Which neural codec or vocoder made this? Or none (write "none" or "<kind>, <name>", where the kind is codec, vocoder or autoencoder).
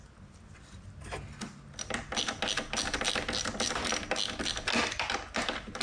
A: none